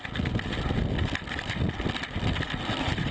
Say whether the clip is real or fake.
real